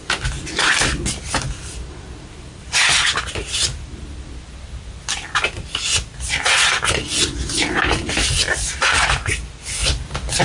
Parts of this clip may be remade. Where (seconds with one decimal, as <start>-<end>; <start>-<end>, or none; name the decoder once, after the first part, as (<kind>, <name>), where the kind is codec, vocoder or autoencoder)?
none